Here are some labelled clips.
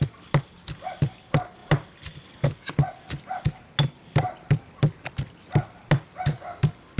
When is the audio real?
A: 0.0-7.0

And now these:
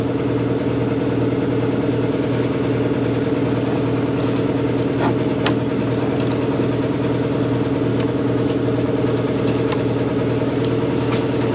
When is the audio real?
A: 0.0-7.9; 8.6-11.5

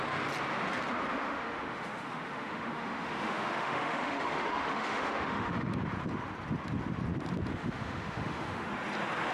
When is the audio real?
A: 0.0-1.1; 5.7-7.5; 8.7-9.3